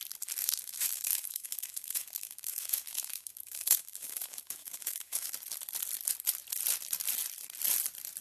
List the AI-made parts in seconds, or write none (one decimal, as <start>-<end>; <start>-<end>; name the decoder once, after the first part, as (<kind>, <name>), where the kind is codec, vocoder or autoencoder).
0.4-5.3 (autoencoder, DAC-VAE)